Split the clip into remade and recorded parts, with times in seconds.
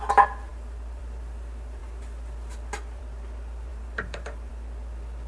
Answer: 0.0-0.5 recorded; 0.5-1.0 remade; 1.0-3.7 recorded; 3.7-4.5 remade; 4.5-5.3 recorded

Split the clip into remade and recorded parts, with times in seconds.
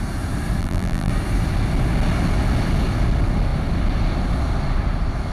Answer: 0.0-0.6 recorded; 0.6-1.1 remade; 1.1-5.3 recorded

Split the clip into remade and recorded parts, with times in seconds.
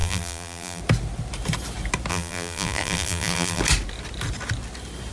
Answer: 0.0-0.8 remade; 0.8-2.1 recorded; 2.1-3.6 remade; 3.6-5.1 recorded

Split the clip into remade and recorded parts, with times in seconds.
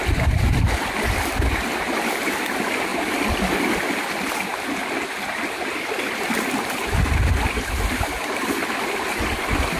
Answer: 0.0-9.8 recorded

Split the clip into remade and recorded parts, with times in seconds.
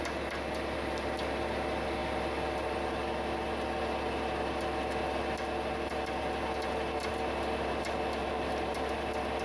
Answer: 0.0-8.2 recorded; 8.2-8.9 remade; 8.9-9.4 recorded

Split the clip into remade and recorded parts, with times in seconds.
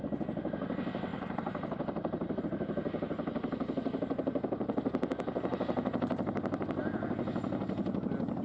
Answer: 0.0-1.1 recorded; 1.1-2.4 remade; 2.4-8.4 recorded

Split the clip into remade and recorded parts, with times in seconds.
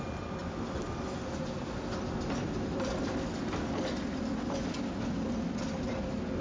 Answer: 0.0-0.4 recorded; 0.4-4.2 remade; 4.2-6.4 recorded